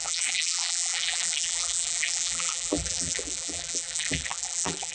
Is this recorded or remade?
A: remade